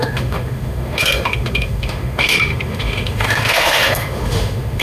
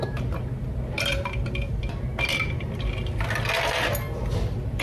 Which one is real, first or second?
second